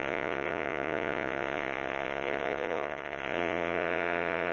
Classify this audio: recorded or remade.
remade